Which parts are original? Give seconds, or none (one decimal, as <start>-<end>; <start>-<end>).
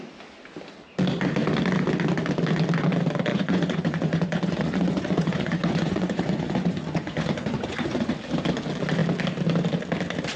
0.0-3.3; 8.1-10.4